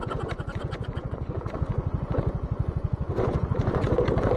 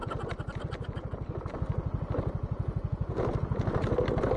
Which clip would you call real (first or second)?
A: second